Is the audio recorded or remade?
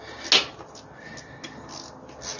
recorded